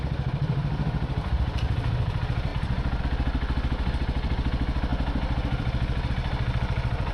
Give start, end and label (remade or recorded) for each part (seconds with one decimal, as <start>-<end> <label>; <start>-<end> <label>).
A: 0.0-0.4 recorded; 0.4-1.3 remade; 1.3-2.5 recorded; 2.5-3.0 remade; 3.0-4.9 recorded; 4.9-6.1 remade; 6.1-7.1 recorded